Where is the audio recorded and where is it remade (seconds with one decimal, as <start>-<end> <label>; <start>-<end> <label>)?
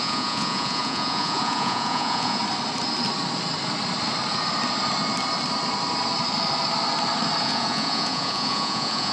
0.0-2.4 remade; 2.4-7.4 recorded; 7.4-9.1 remade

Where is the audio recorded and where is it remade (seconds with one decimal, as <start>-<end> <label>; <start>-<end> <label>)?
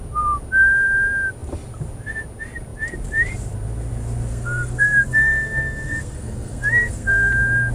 0.0-4.3 recorded; 4.3-7.3 remade; 7.3-7.7 recorded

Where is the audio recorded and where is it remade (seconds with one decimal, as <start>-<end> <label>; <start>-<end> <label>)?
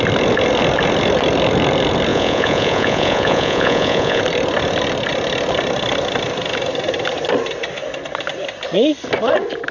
0.0-2.1 recorded; 2.1-4.2 remade; 4.2-9.7 recorded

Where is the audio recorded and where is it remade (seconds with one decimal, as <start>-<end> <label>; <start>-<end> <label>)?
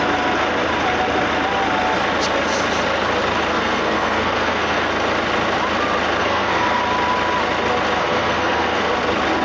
0.0-3.5 recorded; 3.5-4.9 remade; 4.9-6.2 recorded; 6.2-6.8 remade; 6.8-8.0 recorded; 8.0-8.9 remade; 8.9-9.4 recorded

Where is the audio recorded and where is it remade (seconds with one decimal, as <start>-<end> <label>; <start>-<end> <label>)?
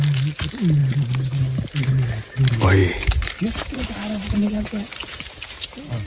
0.0-2.8 recorded; 2.8-4.6 remade; 4.6-5.0 recorded; 5.0-6.1 remade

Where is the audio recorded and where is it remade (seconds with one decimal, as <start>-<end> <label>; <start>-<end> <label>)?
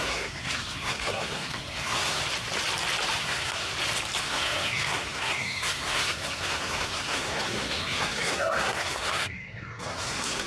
0.0-2.2 remade; 2.2-3.2 recorded; 3.2-3.7 remade; 3.7-4.2 recorded; 4.2-10.5 remade